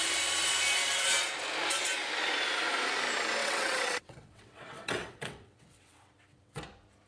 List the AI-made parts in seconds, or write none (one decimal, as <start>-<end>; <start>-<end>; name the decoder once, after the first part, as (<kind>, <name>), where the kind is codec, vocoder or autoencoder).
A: 3.4-6.6 (vocoder, WaveNeXt)